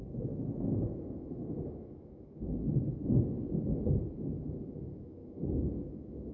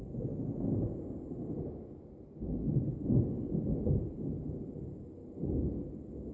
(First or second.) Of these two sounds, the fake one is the first